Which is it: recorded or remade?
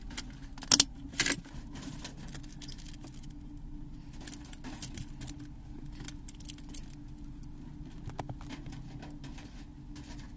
recorded